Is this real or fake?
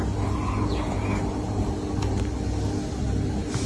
real